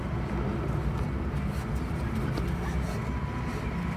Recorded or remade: recorded